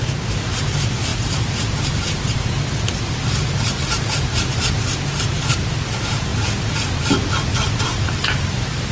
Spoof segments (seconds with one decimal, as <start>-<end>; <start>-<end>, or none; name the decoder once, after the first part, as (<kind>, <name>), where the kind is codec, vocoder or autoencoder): 0.0-6.3 (vocoder, BigVGAN v2); 7.3-8.9